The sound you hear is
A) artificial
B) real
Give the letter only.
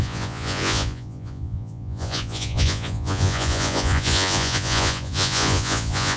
A